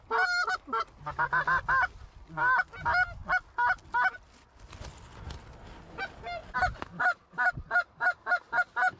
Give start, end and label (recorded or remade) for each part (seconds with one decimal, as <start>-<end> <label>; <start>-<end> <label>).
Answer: 0.0-9.0 recorded